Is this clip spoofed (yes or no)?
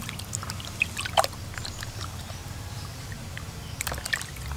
no